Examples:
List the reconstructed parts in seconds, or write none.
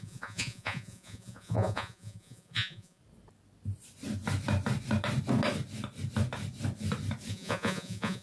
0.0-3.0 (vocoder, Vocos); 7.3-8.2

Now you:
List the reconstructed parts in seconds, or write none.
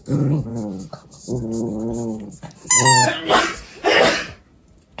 none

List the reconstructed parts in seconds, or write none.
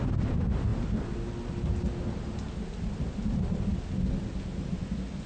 none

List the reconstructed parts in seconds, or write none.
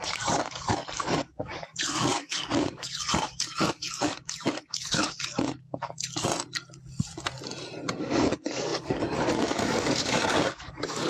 0.0-6.3 (codec, DAC); 8.0-11.1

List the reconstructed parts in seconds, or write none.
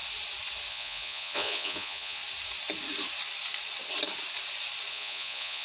0.7-2.2 (vocoder, Vocos); 4.9-5.6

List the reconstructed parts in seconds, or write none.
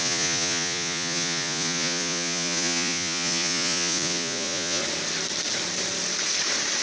0.0-4.8 (vocoder, Vocos)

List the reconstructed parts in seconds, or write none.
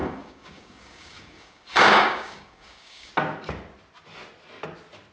0.0-3.1 (codec, DAC)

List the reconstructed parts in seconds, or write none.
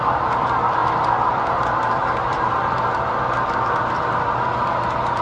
0.8-3.9 (vocoder, BigVGAN v2)